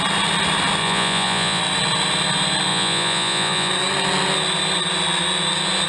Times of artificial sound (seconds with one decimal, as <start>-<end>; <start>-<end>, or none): 0.8-1.6; 2.7-3.7

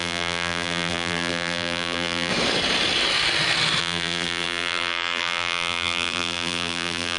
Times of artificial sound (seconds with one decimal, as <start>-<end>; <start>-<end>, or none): 0.0-2.3; 3.8-7.2

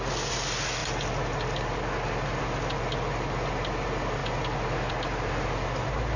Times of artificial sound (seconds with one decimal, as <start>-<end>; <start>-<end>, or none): none